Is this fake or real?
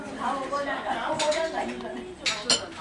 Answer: real